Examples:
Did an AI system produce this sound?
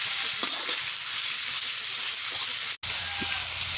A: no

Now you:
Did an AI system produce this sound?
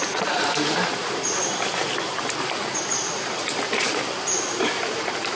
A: yes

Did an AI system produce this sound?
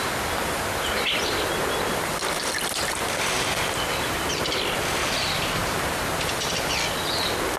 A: no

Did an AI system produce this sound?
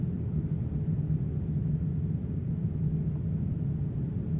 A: no